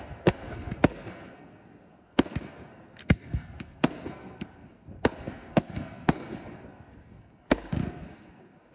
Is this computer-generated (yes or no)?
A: yes